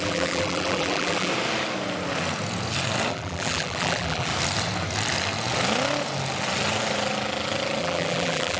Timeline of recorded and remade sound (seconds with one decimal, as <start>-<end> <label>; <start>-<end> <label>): 0.0-1.3 remade; 1.3-3.1 recorded; 3.1-4.3 remade; 4.3-7.8 recorded; 7.8-8.6 remade